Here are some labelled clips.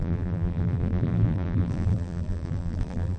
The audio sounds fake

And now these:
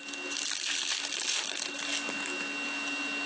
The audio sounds real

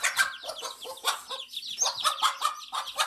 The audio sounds real